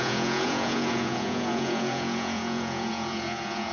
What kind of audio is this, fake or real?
fake